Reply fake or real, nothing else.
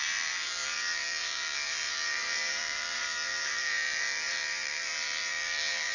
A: fake